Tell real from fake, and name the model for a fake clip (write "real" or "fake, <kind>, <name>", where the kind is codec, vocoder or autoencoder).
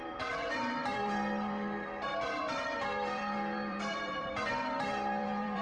fake, vocoder, BigVGAN v2